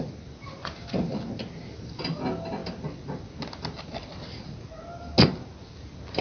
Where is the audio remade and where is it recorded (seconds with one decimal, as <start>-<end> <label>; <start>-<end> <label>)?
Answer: 0.0-6.2 recorded